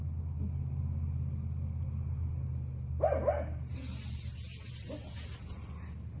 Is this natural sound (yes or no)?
yes